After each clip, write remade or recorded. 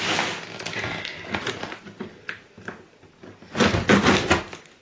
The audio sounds recorded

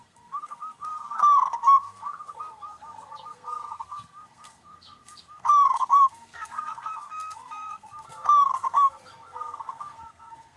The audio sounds remade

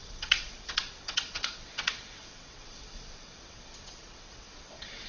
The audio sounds remade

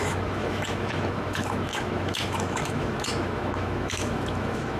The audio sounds remade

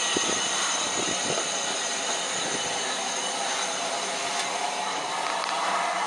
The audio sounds recorded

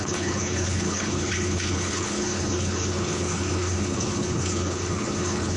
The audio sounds remade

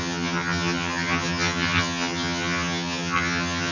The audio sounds remade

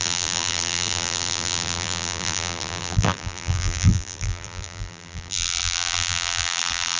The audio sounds remade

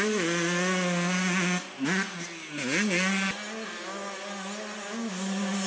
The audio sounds recorded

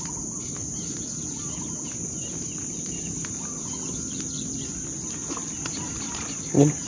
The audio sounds recorded